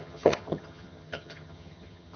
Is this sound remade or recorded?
remade